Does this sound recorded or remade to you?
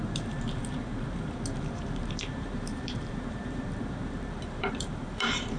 remade